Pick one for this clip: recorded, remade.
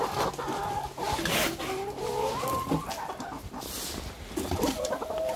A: recorded